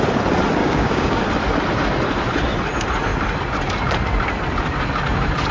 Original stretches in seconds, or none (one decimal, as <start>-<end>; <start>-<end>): 0.0-0.6; 1.2-5.5